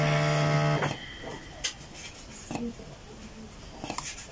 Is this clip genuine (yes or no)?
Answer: yes